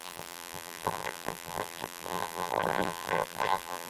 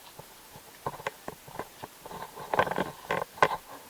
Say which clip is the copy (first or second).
first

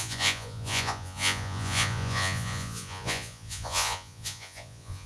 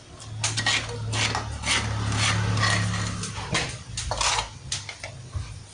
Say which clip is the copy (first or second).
first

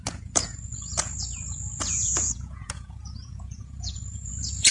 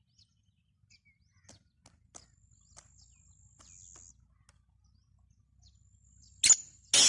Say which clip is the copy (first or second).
first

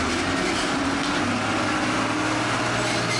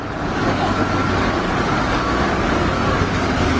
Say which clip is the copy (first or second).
second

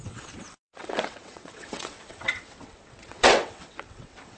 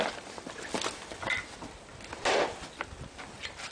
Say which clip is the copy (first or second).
first